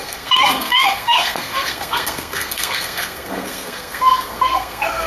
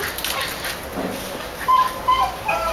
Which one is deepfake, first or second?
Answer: first